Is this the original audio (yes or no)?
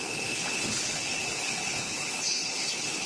no